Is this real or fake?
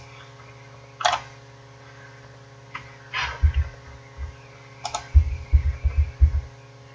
real